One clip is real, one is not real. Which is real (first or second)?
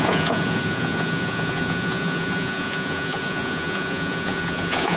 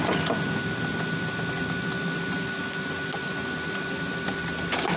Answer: second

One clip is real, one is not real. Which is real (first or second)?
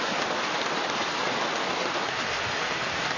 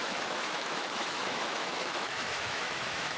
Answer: first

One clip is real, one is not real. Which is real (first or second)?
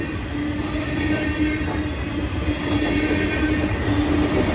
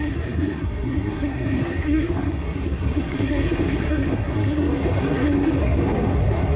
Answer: first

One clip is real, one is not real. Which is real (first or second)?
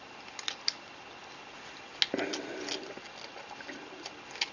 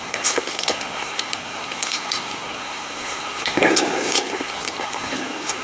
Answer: first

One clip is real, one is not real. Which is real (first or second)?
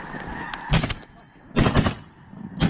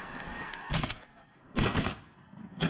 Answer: first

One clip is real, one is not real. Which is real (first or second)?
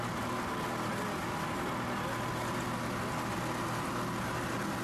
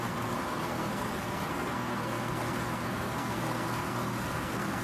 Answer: first